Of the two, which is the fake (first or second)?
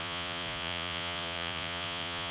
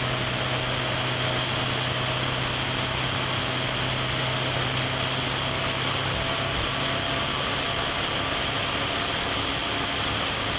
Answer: first